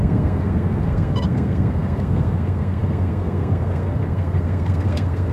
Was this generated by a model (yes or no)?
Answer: yes